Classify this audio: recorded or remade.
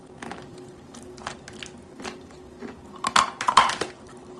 recorded